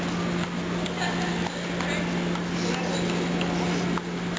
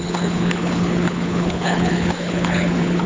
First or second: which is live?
first